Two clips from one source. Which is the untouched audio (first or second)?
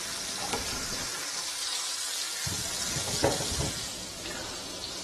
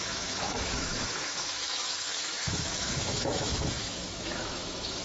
first